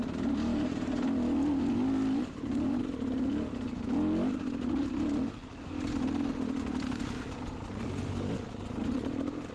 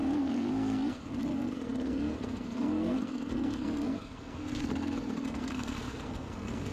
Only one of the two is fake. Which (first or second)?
second